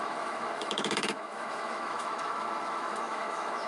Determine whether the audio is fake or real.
fake